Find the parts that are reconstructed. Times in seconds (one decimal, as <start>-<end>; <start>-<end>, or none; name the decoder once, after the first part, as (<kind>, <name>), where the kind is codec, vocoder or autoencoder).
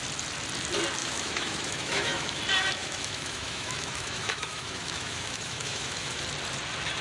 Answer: 1.0-2.4 (autoencoder, DAC-VAE); 2.8-6.2